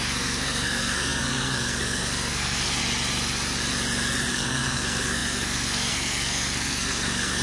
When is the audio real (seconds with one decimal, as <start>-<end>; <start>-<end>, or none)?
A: 2.8-4.3